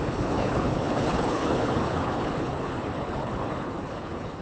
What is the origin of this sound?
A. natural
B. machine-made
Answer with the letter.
B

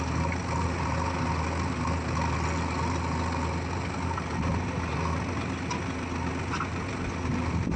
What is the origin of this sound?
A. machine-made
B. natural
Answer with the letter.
B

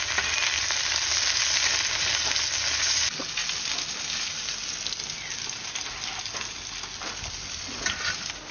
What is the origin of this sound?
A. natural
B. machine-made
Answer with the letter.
A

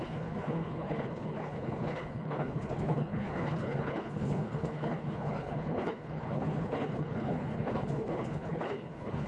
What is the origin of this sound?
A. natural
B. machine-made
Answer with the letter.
B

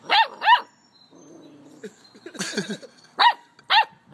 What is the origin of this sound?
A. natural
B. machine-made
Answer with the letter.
A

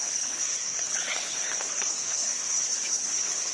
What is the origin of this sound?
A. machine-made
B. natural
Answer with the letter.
A